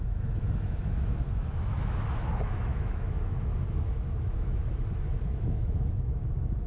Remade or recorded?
remade